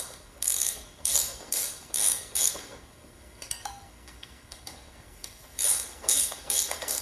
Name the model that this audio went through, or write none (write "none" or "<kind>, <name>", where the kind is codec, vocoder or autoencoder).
codec, SNAC